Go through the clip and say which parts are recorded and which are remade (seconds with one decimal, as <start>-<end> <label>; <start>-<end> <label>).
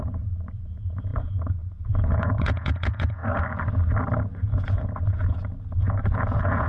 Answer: 0.0-3.2 remade; 3.2-4.2 recorded; 4.2-6.7 remade